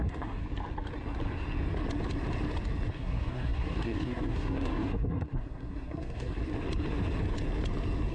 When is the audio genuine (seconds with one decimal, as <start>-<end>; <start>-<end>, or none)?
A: 0.4-2.9; 6.4-8.1